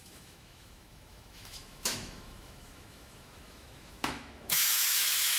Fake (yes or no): yes